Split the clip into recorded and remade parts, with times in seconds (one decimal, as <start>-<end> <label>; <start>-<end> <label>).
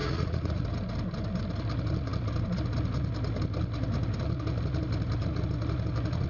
0.0-0.6 remade; 0.6-6.3 recorded